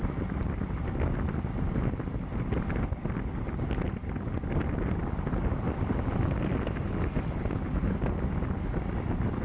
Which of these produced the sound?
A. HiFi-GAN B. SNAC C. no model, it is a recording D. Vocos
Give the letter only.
C